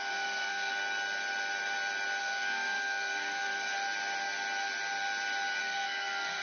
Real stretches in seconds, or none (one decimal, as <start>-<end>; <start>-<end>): 0.7-2.2; 3.7-5.6

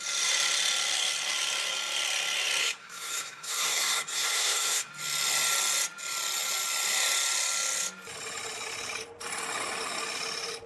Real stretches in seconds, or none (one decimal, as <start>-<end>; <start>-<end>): 0.0-2.6; 4.9-10.7

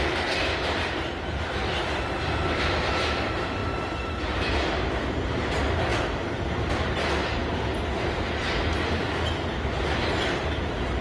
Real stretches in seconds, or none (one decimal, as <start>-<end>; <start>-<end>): 0.0-11.0

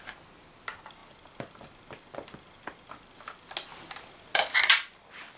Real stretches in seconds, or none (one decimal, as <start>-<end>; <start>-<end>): 0.0-5.4

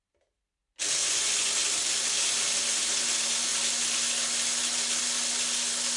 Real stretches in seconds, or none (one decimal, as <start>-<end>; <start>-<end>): 0.0-1.0; 1.5-6.0